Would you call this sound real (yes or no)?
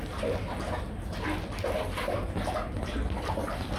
yes